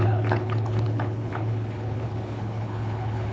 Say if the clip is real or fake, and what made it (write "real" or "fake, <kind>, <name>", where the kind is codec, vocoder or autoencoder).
fake, codec, HILCodec